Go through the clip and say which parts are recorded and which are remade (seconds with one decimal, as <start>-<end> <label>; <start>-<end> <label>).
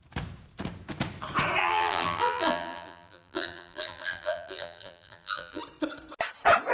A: 0.0-1.6 recorded; 1.6-5.6 remade; 5.6-6.7 recorded